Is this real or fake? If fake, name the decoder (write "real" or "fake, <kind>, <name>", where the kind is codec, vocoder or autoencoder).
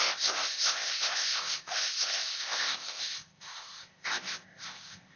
fake, codec, ZipCodec